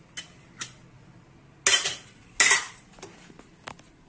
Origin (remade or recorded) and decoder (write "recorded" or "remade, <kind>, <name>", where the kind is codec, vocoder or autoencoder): recorded